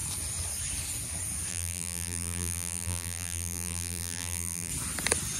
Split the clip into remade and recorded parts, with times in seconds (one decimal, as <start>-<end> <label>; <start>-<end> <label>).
0.0-1.5 recorded; 1.5-4.7 remade; 4.7-5.4 recorded